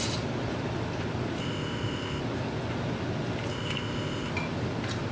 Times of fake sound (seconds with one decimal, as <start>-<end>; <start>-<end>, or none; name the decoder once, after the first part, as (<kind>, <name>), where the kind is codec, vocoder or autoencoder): 1.4-2.2 (codec, ZipCodec); 3.5-4.3